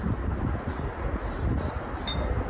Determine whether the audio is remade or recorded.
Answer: remade